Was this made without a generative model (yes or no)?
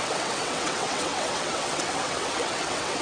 no